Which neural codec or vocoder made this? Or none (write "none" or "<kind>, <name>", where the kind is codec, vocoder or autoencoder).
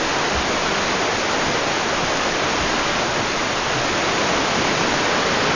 none